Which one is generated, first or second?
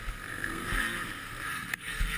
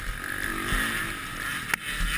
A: first